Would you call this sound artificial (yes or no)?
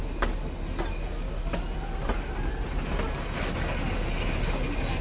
no